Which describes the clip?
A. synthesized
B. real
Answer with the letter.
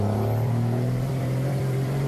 A